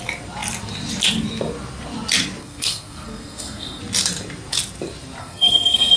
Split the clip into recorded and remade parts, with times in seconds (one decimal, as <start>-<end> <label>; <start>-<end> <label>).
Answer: 0.0-2.4 recorded; 2.4-3.8 remade; 3.8-5.2 recorded; 5.2-6.0 remade